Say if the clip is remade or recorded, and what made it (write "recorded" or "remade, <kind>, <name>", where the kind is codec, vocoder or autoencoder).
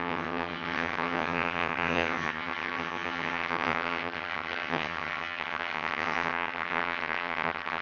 remade, vocoder, HiFi-GAN